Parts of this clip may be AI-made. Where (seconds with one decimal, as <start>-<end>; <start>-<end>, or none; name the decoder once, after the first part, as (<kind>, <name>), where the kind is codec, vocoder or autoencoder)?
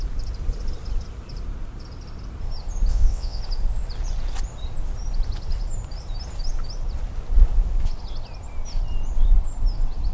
2.9-3.4 (vocoder, WaveNeXt)